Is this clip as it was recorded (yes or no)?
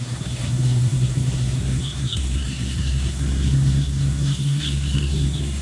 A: no